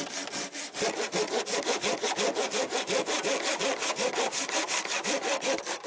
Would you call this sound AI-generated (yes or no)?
no